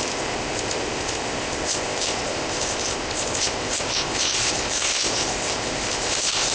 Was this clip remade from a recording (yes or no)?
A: yes